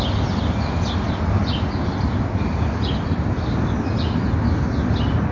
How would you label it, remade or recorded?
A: recorded